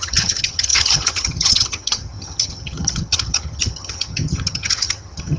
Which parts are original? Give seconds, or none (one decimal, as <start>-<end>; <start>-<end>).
none